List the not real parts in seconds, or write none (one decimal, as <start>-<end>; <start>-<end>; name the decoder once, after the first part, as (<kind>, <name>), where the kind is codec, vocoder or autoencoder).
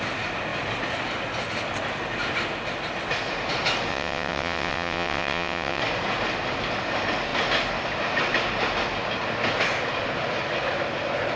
3.9-5.8 (vocoder, WaveNeXt)